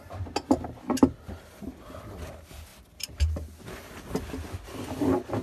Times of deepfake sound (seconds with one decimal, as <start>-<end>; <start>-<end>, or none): none